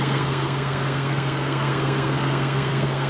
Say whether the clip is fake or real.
fake